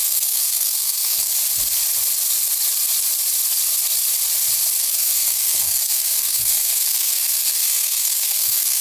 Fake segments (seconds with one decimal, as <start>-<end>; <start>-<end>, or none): 0.0-1.3; 4.8-8.8